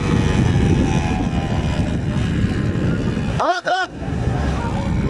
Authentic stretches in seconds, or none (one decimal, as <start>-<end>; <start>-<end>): 0.0-3.3; 4.6-5.1